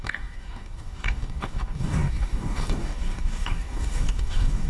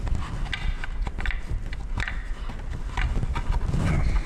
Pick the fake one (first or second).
first